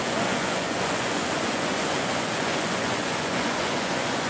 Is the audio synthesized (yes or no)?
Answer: yes